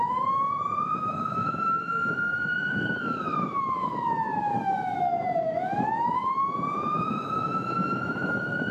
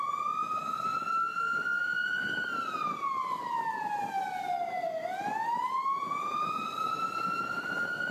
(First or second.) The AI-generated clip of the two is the first